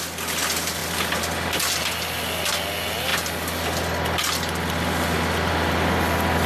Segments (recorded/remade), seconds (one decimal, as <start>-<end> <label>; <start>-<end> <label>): 0.0-6.5 recorded